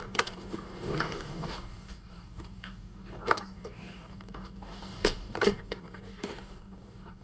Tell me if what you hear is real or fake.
fake